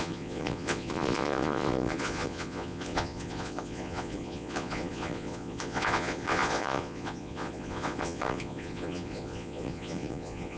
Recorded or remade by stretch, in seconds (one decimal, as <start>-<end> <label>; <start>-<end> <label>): 0.0-10.6 remade